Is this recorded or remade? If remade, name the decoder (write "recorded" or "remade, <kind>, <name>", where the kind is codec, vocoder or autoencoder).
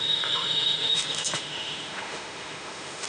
remade, autoencoder, DAC-VAE